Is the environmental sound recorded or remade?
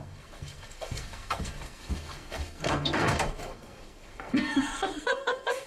remade